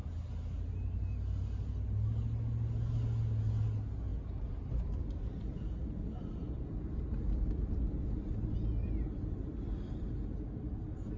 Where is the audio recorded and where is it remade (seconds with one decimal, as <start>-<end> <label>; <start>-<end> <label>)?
0.0-11.2 recorded